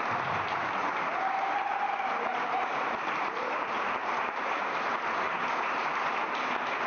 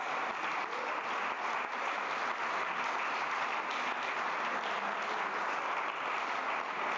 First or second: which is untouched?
second